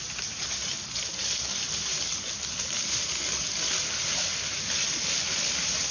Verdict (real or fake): real